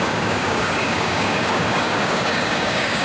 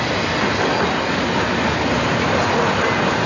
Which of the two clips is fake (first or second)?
first